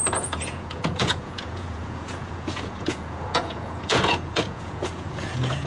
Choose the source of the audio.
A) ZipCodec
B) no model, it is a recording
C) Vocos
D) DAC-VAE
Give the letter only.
C